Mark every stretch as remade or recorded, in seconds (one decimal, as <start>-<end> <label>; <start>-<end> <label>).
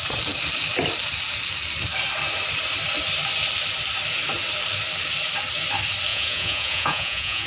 0.0-6.1 recorded; 6.1-7.5 remade